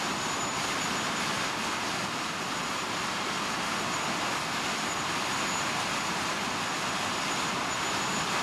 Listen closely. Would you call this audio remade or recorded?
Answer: recorded